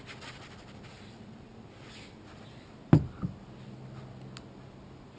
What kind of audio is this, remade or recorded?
recorded